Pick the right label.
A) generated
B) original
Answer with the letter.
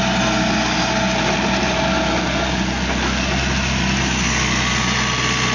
B